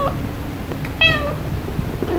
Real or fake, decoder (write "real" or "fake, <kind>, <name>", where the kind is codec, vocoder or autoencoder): real